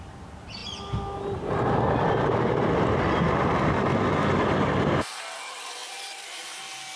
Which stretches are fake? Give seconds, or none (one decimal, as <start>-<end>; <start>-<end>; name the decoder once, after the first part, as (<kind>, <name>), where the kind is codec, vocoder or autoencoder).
none